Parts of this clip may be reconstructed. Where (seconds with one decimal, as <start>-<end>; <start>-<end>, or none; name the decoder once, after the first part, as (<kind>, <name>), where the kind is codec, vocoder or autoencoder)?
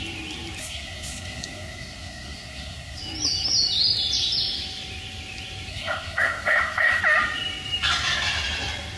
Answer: 0.6-3.0 (codec, SNAC); 5.7-7.0